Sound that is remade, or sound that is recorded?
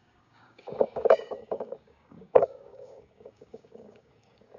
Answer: remade